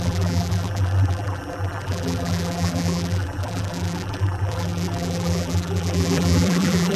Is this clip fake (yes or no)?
yes